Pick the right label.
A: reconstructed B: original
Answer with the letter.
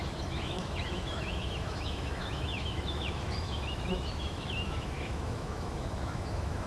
A